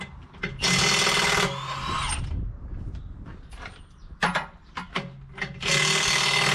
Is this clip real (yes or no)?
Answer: yes